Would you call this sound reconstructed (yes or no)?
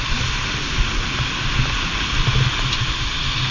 no